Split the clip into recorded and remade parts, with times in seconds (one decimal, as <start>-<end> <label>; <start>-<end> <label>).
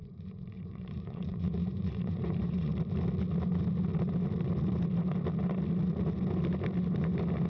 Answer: 0.0-2.7 remade; 2.7-7.5 recorded